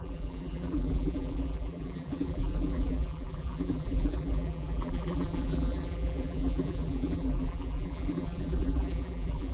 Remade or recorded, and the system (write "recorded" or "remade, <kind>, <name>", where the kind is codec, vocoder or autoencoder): remade, vocoder, BigVGAN v2